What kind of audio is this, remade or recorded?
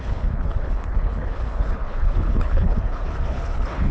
remade